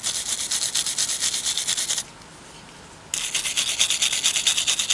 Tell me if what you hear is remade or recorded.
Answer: recorded